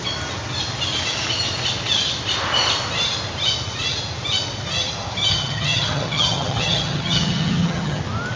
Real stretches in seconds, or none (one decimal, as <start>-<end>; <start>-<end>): 0.0-5.3; 8.0-8.4